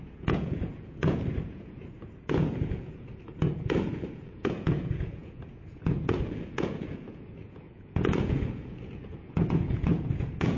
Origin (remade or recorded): remade